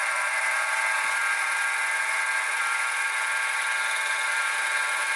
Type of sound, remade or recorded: recorded